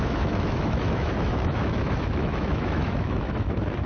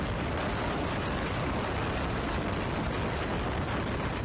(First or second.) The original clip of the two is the second